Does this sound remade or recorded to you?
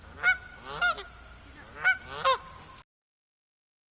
recorded